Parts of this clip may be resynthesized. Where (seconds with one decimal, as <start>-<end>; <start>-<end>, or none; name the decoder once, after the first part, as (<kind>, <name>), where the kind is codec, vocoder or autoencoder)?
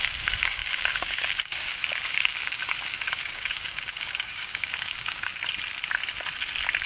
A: 0.0-5.3 (codec, DAC)